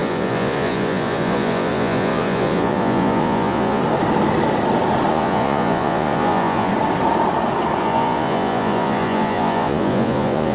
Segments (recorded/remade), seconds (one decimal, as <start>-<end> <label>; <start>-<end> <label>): 0.0-3.8 remade; 3.8-5.1 recorded; 5.1-6.7 remade; 6.7-7.8 recorded; 7.8-10.5 remade